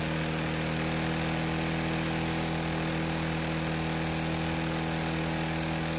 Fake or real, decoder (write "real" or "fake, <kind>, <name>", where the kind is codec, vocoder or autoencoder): real